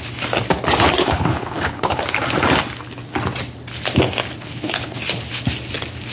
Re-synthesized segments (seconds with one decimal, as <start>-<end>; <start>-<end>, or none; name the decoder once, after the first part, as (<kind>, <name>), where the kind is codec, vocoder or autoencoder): 1.0-2.0 (codec, HILCodec); 4.4-5.0